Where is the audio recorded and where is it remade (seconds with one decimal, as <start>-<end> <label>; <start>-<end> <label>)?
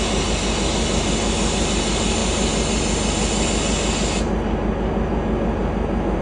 0.0-6.2 recorded